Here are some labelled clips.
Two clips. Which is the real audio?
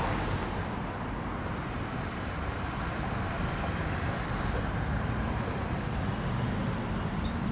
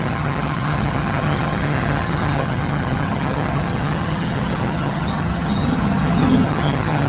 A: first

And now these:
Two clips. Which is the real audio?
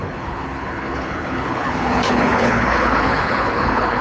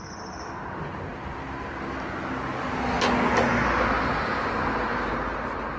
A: second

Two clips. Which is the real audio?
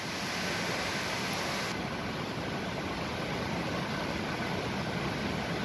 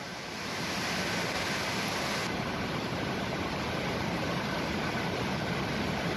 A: first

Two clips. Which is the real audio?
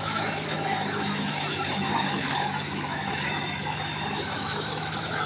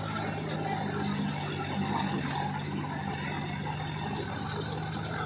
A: second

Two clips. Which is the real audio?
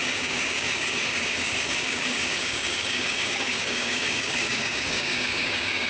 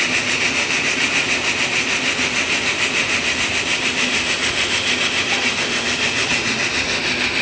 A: second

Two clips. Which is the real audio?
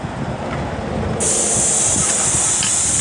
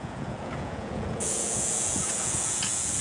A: first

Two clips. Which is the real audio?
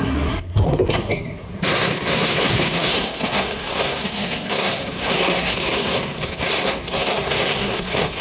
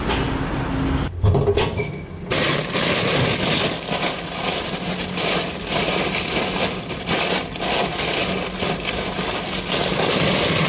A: second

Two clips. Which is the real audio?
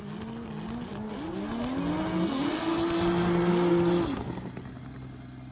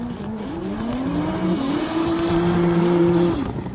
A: first